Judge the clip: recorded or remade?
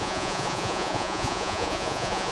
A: remade